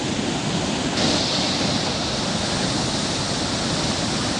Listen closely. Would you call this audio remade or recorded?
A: recorded